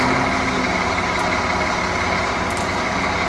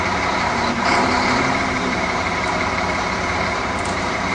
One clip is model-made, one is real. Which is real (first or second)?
first